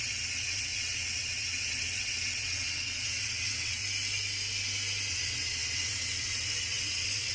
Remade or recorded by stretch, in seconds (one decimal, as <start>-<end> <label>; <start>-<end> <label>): 0.0-3.8 remade; 3.8-5.1 recorded; 5.1-7.3 remade